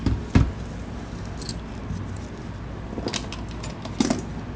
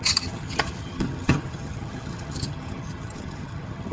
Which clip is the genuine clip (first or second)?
first